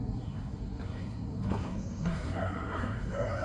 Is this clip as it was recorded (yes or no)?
no